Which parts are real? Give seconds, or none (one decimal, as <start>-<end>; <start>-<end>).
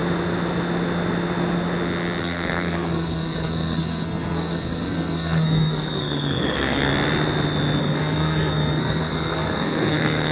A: 0.0-2.2; 6.9-7.8